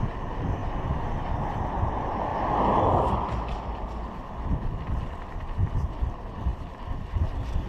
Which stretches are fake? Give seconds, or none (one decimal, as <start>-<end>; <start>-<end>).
none